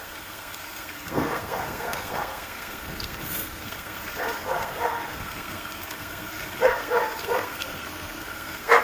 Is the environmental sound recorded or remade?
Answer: remade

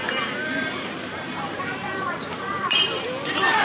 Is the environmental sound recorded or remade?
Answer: remade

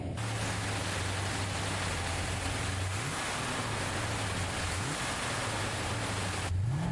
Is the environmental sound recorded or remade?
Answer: recorded